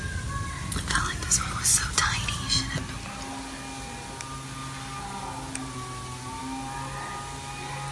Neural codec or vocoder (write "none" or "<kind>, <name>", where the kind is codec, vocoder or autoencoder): none